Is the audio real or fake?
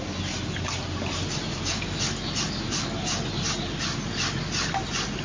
real